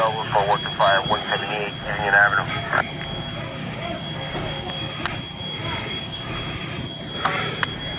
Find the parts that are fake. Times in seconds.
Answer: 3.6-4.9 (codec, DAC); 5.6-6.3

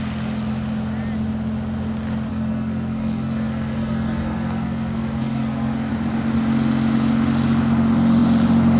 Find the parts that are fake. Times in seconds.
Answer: 2.3-5.9 (codec, SNAC)

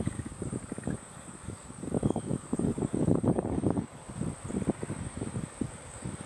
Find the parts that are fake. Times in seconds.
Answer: 0.0-4.0 (codec, DAC); 4.9-6.3

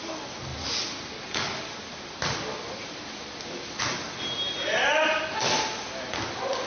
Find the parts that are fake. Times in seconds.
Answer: none

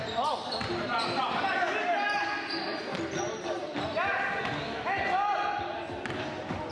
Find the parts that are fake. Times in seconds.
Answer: none

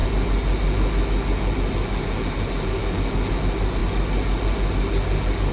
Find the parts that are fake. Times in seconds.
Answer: none

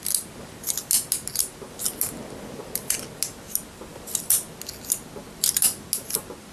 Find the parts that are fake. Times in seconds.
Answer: none

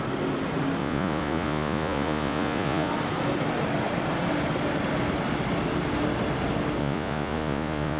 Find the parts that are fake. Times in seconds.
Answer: 0.8-2.9 (vocoder, Vocos); 6.8-8.0